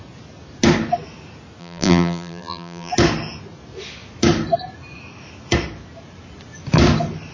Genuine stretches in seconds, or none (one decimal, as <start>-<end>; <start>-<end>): 0.0-1.6; 2.9-7.3